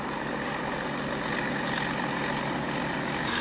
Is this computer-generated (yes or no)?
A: no